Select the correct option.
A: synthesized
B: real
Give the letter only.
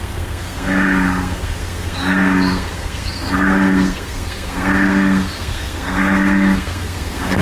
A